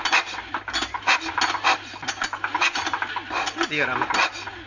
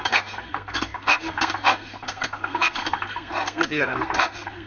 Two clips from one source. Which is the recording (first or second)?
first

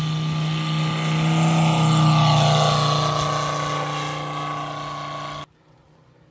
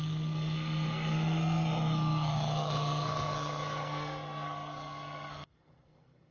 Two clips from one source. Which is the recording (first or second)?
first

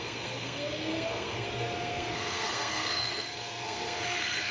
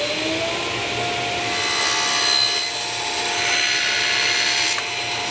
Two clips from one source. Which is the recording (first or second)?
second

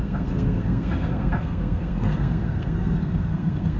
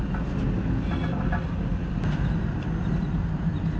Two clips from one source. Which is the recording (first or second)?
second